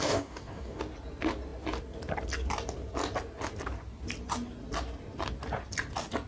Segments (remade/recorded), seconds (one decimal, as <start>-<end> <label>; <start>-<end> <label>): 0.0-0.8 remade; 0.8-6.3 recorded